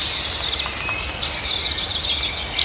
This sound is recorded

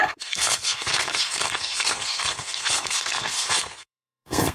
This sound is remade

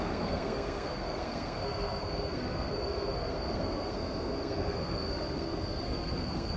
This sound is remade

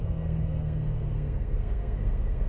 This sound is remade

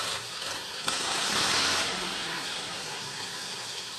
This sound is remade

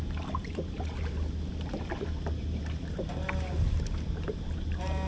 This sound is recorded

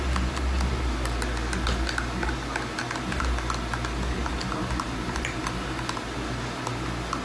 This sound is recorded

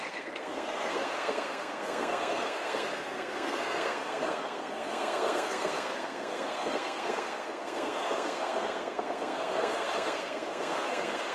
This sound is remade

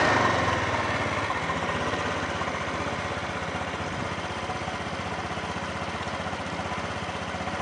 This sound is recorded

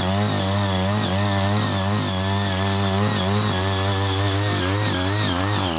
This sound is recorded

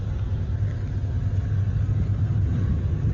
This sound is recorded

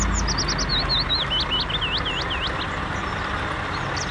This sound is recorded